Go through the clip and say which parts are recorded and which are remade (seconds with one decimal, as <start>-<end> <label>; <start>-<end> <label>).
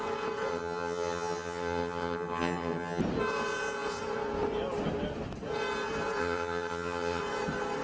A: 0.0-0.5 recorded; 0.5-3.0 remade; 3.0-6.2 recorded; 6.2-7.2 remade; 7.2-7.8 recorded